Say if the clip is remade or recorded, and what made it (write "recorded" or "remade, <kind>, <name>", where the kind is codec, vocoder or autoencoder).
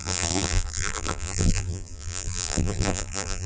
remade, vocoder, BigVGAN v2